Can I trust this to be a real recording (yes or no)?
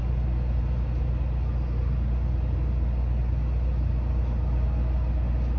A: yes